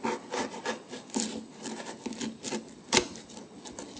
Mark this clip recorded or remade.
recorded